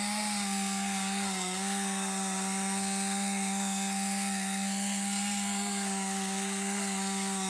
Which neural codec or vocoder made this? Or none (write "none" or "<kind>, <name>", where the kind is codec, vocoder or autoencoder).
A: codec, SNAC